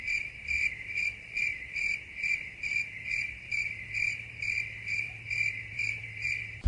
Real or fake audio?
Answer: fake